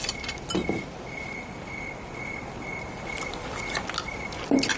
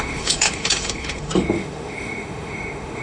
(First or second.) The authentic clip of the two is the first